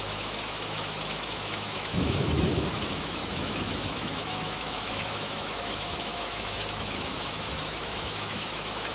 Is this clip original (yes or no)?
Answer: no